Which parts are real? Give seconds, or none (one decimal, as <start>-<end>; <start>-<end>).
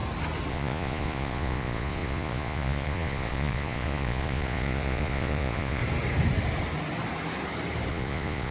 0.0-0.5; 5.8-7.9